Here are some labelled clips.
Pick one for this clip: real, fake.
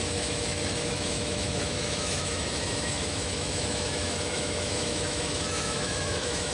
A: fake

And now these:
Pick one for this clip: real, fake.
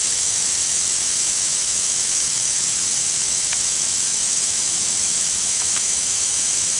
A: fake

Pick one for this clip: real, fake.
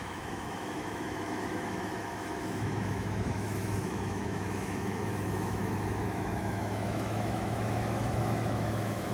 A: fake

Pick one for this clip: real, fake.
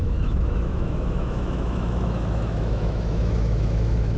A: fake